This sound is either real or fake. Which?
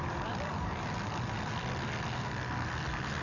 real